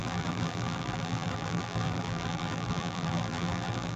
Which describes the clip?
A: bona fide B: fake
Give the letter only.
B